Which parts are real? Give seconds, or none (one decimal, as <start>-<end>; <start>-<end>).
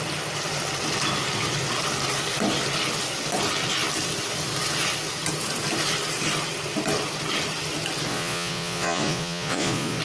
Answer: 0.0-8.1